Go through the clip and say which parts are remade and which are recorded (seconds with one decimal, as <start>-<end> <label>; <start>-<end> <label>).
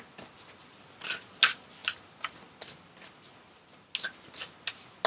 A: 0.0-5.1 recorded